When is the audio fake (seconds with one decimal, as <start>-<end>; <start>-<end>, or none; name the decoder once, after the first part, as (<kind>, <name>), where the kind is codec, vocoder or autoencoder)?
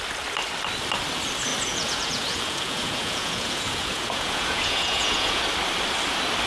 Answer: 1.5-5.4 (vocoder, Vocos)